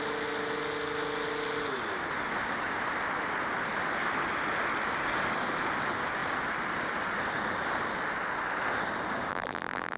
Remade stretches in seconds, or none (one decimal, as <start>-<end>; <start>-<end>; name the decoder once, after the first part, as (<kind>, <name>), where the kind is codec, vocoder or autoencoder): 9.3-10.0 (vocoder, BigVGAN v2)